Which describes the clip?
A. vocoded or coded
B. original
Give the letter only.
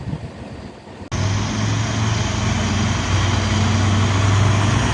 B